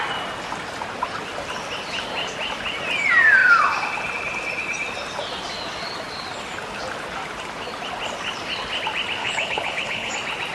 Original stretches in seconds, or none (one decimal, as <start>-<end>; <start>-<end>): 0.0-9.2; 10.1-10.5